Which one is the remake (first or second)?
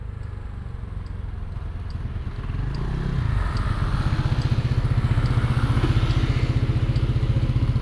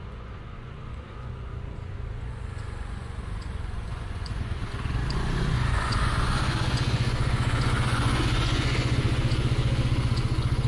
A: second